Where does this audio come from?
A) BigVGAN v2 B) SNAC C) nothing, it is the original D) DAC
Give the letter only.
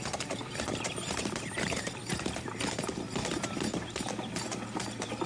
A